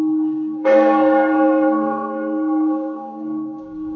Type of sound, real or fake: fake